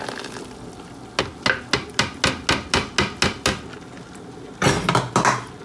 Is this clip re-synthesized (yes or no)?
no